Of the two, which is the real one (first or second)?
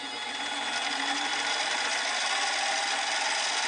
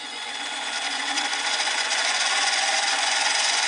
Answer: first